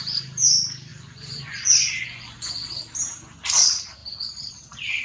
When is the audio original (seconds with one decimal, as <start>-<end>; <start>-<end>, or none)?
0.0-0.9; 2.7-5.0